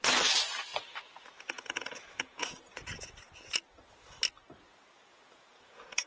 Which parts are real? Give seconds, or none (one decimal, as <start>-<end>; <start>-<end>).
0.0-0.7; 3.2-5.1